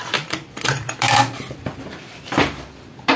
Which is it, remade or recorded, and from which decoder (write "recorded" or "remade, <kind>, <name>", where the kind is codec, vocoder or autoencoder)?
remade, vocoder, BigVGAN v2